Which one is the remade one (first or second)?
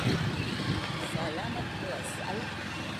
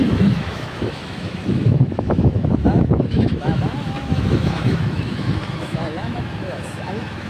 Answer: second